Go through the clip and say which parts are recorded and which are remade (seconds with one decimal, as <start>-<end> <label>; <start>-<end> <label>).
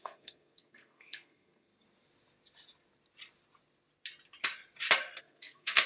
0.0-1.7 remade; 1.7-5.2 recorded; 5.2-5.9 remade